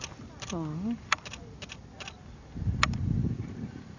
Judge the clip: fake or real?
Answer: real